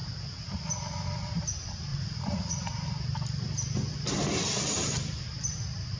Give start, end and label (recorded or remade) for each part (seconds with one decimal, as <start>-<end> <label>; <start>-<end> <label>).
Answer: 0.0-1.9 recorded; 1.9-2.9 remade; 2.9-6.0 recorded